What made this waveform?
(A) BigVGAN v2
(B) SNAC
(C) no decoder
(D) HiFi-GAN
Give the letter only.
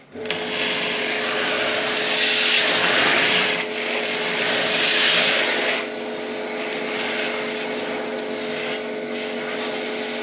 C